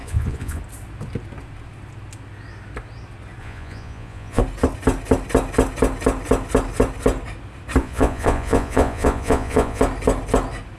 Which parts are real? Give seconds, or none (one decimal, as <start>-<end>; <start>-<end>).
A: 0.6-3.4; 4.4-7.8; 9.8-10.8